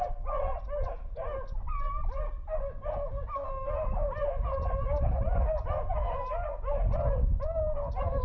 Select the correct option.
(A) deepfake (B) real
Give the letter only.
B